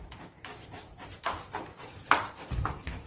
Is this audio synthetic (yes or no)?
no